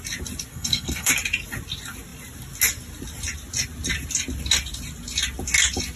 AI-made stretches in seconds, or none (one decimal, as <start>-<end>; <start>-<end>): 0.5-1.1